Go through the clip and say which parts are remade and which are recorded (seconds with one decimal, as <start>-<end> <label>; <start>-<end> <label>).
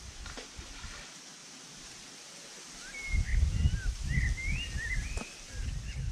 0.0-6.1 recorded